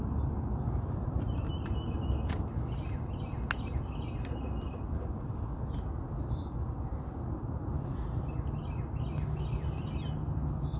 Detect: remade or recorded recorded